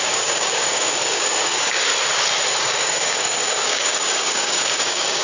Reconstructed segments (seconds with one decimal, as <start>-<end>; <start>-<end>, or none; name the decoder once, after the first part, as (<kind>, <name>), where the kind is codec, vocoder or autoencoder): 0.0-1.9 (codec, DAC); 2.6-5.2